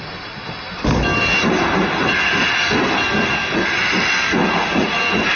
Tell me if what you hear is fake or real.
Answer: real